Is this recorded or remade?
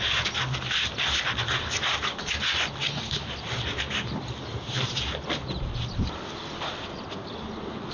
recorded